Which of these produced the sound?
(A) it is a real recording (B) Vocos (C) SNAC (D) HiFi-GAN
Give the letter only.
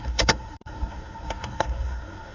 C